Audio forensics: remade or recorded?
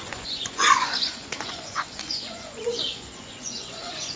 remade